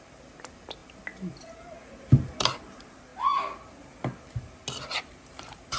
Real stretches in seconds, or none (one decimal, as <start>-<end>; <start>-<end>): 3.1-5.1

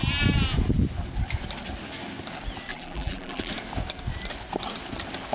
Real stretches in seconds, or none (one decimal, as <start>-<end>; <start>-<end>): 0.0-2.7; 3.5-5.3